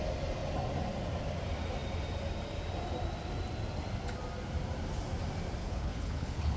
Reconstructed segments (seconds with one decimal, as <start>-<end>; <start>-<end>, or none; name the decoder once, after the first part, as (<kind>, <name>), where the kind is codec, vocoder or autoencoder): 5.6-6.6 (codec, HILCodec)